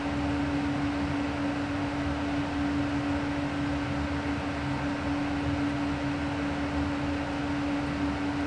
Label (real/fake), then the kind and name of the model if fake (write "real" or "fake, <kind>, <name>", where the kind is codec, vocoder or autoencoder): real